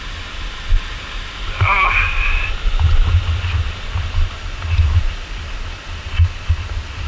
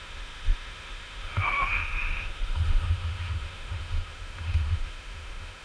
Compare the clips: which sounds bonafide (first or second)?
first